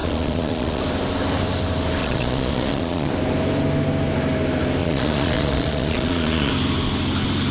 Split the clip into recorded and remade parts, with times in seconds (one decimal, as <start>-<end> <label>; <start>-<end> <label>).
0.0-0.8 remade; 0.8-2.0 recorded; 2.0-3.1 remade; 3.1-4.8 recorded; 4.8-6.5 remade; 6.5-7.5 recorded